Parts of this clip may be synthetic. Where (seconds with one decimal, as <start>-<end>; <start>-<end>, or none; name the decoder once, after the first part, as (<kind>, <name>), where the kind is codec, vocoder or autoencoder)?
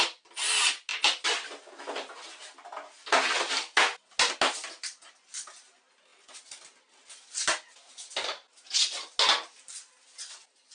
none